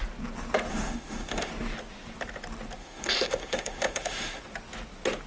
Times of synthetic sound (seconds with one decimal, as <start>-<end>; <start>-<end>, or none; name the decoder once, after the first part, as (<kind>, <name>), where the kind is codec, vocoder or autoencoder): 0.7-1.5 (autoencoder, DAC-VAE); 2.8-4.4